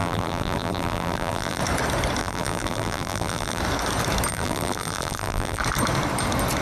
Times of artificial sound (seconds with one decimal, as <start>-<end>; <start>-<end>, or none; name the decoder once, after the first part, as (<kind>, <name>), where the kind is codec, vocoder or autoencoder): 0.0-1.6 (vocoder, BigVGAN v2); 2.2-3.6; 4.3-5.6